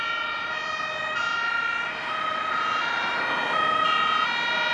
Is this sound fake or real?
real